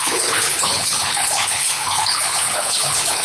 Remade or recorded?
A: remade